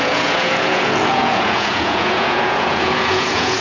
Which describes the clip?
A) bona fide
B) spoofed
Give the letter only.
B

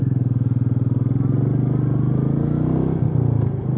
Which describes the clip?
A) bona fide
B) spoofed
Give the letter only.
A